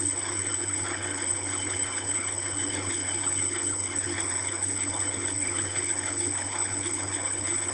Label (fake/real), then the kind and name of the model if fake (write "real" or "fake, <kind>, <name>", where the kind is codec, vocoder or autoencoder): fake, codec, HILCodec